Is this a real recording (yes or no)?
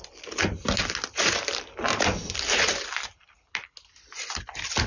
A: yes